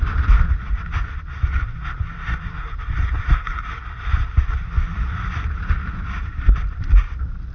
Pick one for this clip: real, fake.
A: real